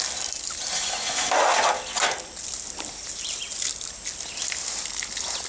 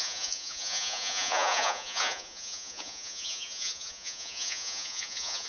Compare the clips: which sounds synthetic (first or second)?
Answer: second